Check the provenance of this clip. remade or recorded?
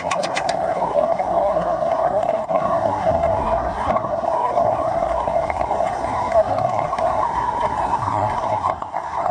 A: remade